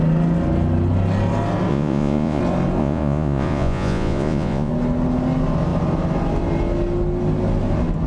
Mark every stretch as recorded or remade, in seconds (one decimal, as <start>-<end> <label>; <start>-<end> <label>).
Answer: 0.0-1.7 recorded; 1.7-2.4 remade; 2.4-2.8 recorded; 2.8-4.7 remade; 4.7-8.1 recorded